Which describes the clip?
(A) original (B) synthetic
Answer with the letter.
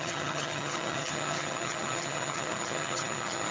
B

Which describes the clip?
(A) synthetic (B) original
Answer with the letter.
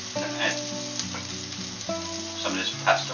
B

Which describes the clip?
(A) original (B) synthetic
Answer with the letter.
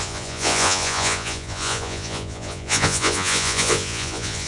B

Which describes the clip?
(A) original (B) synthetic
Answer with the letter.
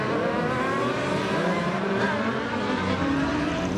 B